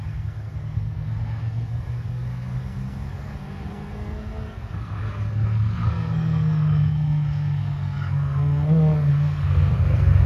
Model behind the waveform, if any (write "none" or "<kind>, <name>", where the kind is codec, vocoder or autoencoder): codec, SNAC